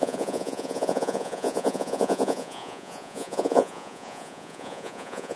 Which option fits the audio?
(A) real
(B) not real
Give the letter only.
B